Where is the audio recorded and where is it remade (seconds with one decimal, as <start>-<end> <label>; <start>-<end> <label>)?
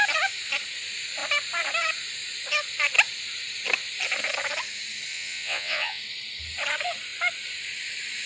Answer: 0.0-5.1 recorded; 5.1-6.0 remade; 6.0-8.3 recorded